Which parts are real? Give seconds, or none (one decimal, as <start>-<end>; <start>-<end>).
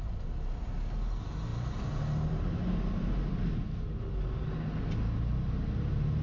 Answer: 0.0-6.2